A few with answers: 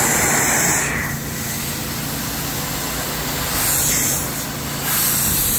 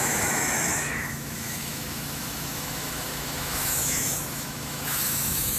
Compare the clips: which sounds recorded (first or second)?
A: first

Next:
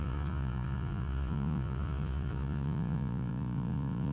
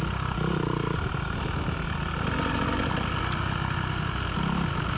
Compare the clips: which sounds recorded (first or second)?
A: second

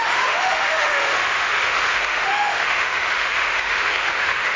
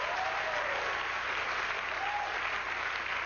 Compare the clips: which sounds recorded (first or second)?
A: second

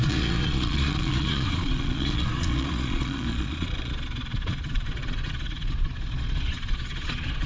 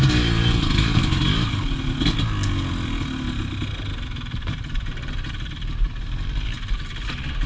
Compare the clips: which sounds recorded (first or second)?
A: second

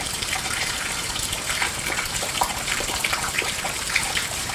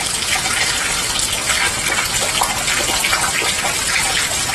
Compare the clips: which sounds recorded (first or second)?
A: second